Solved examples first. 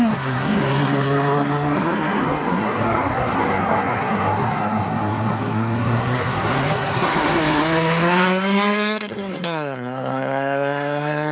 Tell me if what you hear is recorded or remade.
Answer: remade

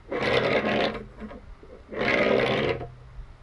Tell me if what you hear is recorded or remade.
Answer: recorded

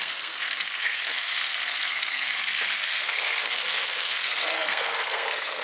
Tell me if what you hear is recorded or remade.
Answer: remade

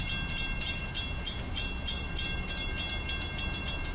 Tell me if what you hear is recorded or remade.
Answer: recorded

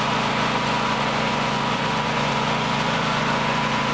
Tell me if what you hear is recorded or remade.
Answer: remade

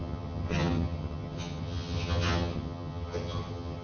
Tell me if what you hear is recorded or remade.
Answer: remade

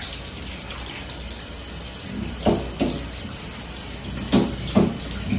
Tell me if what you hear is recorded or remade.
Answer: recorded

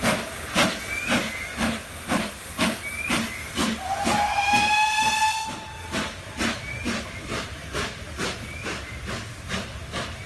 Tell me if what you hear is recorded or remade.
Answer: recorded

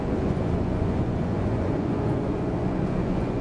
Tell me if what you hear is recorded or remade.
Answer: remade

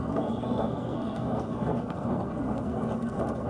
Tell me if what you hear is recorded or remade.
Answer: remade